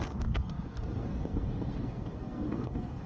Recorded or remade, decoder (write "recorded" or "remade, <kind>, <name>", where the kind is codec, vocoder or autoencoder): remade, codec, SNAC